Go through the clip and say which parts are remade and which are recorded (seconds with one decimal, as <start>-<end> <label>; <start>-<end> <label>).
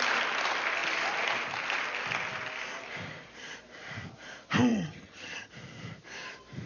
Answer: 0.0-4.7 recorded; 4.7-5.5 remade; 5.5-6.7 recorded